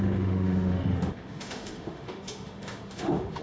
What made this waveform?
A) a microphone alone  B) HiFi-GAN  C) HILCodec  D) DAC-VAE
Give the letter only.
D